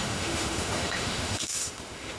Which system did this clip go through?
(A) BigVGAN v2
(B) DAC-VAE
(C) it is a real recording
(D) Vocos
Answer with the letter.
B